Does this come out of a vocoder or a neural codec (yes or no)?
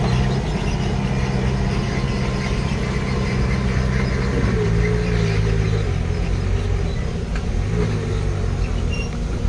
no